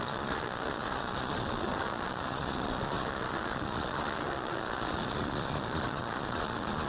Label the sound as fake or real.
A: fake